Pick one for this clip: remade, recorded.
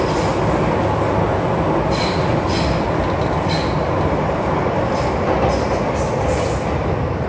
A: recorded